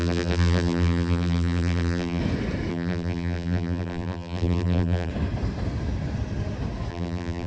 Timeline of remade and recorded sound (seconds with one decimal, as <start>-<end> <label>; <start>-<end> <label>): 0.0-2.2 remade; 2.2-2.7 recorded; 2.7-5.1 remade; 5.1-6.9 recorded; 6.9-7.5 remade